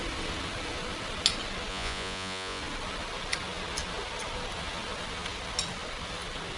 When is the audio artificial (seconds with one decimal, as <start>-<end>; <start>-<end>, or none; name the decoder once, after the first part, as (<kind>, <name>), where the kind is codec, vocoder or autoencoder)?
1.7-2.6 (vocoder, Vocos)